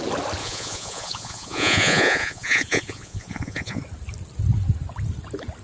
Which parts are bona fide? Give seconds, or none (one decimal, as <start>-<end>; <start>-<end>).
0.0-0.4; 3.8-5.6